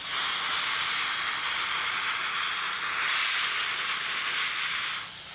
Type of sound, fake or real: real